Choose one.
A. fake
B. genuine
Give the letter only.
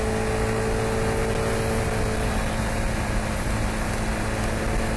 B